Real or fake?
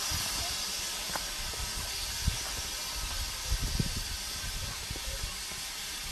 real